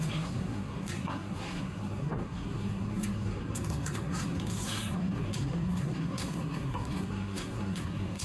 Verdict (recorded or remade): remade